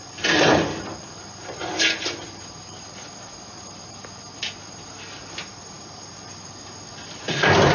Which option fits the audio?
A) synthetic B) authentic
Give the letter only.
B